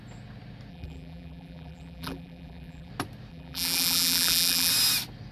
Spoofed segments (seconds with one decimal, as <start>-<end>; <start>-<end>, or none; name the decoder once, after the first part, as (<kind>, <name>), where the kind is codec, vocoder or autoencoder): 0.7-2.9 (vocoder, BigVGAN v2); 3.3-4.7

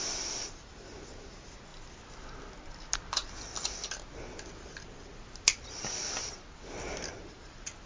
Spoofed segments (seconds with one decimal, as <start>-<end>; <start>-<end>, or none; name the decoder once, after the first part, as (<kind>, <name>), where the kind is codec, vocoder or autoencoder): none